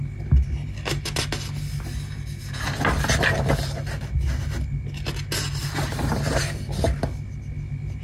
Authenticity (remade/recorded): recorded